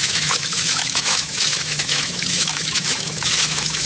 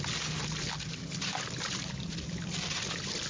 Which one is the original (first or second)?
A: second